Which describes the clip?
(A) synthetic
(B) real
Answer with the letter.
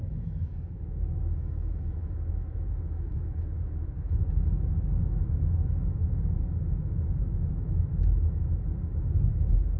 A